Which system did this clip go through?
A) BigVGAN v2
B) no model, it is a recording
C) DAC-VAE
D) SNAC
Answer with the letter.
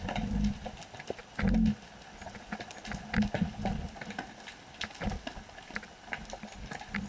B